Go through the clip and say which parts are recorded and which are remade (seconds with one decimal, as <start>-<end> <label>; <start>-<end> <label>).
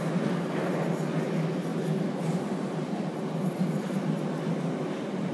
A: 0.0-5.3 recorded